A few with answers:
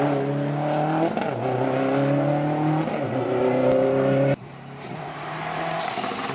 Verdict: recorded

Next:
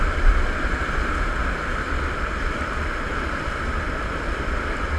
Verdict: recorded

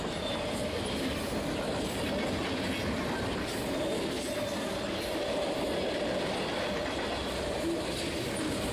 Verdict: recorded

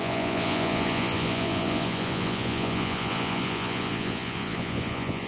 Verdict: remade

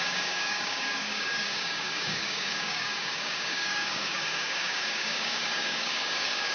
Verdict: remade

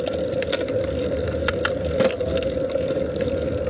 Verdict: recorded